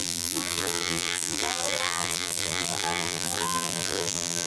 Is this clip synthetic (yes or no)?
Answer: yes